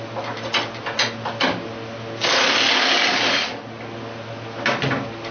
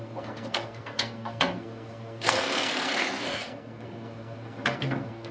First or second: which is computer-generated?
second